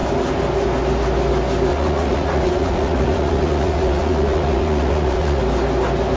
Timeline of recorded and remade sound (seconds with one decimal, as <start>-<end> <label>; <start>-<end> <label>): 0.0-1.7 recorded; 1.7-5.4 remade; 5.4-6.2 recorded